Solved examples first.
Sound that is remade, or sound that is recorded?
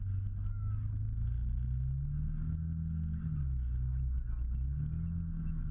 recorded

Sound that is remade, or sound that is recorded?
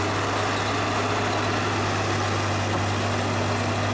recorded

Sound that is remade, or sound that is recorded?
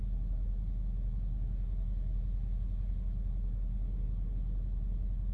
recorded